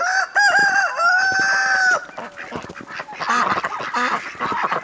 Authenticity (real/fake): real